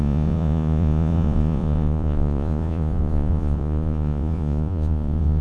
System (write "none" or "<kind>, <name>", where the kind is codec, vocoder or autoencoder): vocoder, Vocos